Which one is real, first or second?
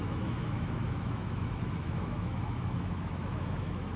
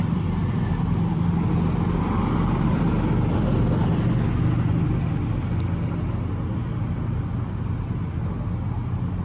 second